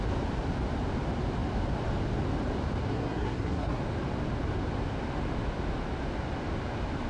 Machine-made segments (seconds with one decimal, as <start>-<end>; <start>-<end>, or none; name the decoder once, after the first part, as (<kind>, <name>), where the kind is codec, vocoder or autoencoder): 2.8-3.8 (codec, SNAC)